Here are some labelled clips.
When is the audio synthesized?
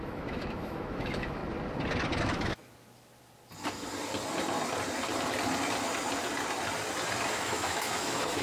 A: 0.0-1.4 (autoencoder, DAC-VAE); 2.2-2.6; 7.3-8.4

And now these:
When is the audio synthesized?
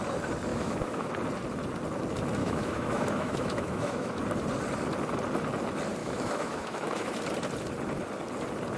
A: 0.5-1.1 (autoencoder, DAC-VAE); 2.4-4.2; 6.0-7.2